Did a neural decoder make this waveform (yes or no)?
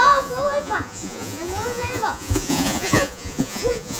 yes